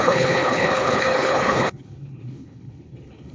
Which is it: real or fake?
fake